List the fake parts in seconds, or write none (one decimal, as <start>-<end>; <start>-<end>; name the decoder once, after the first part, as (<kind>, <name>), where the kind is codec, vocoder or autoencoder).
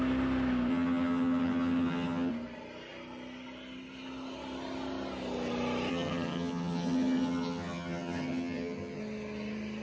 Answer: 0.7-2.3 (vocoder, HiFi-GAN); 5.9-9.0